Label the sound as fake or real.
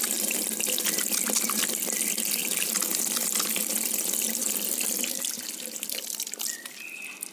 fake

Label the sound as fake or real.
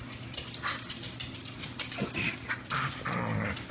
real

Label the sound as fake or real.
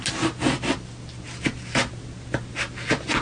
real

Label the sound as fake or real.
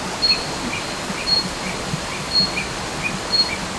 real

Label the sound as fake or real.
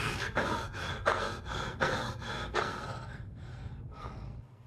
fake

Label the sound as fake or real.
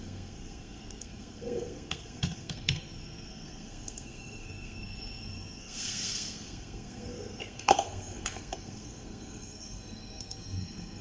fake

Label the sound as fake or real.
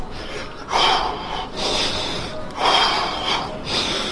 real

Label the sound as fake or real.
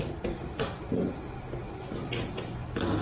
real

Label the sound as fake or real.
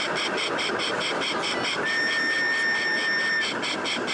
real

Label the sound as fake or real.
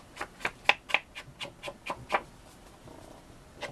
real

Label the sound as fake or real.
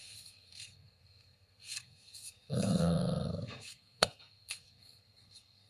fake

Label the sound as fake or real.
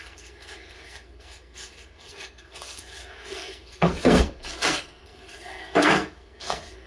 fake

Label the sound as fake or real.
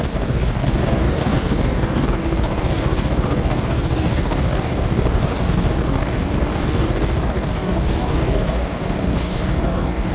fake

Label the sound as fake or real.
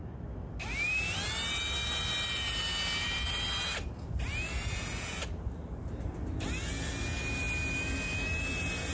real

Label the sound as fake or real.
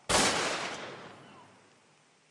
real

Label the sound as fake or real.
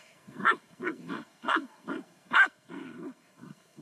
fake